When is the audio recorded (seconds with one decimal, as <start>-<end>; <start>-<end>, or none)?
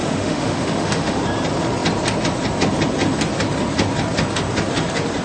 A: 1.2-5.2